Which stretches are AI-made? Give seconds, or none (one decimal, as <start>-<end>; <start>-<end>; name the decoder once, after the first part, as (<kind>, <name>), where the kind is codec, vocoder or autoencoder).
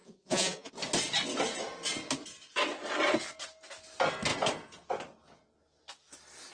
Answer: 0.0-0.7 (vocoder, Vocos)